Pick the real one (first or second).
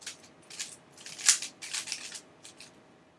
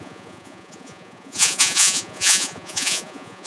first